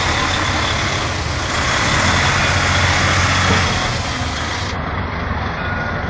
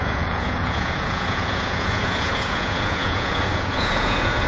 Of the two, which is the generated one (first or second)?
second